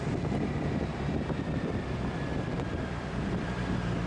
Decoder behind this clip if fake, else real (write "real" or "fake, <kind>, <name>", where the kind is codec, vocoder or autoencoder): fake, vocoder, BigVGAN v2